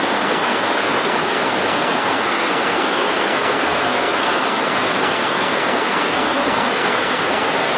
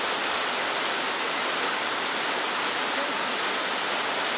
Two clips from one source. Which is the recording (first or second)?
second